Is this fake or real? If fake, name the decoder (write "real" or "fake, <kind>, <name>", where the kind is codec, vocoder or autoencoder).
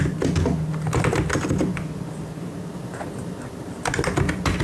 real